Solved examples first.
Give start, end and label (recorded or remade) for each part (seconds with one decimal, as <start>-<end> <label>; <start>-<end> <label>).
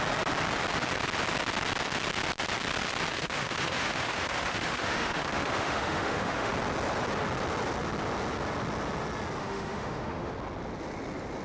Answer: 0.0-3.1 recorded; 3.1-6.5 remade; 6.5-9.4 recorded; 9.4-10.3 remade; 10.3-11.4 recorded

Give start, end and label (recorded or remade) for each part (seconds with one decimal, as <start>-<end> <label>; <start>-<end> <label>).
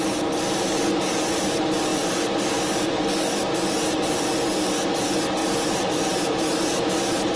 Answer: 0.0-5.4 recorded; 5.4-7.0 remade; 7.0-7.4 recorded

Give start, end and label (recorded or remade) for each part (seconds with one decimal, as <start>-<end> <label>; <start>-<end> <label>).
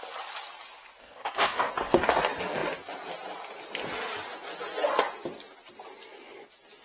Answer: 0.0-1.0 recorded; 1.0-1.7 remade; 1.7-6.8 recorded